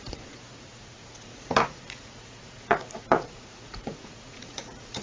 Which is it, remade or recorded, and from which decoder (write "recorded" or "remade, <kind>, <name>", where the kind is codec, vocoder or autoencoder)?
remade, vocoder, Vocos